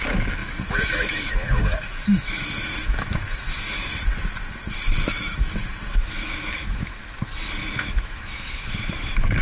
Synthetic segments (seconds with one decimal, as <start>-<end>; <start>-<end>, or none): 0.0-3.9; 4.7-7.0; 7.8-9.4